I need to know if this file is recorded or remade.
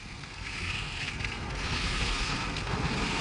remade